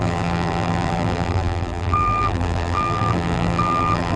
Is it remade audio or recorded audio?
remade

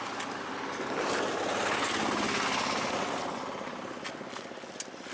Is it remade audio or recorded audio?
recorded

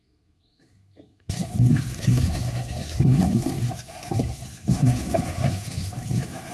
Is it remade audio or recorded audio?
remade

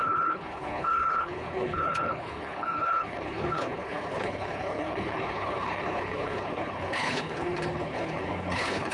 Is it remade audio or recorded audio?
remade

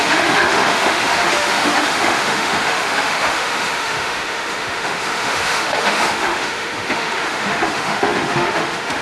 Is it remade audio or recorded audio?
remade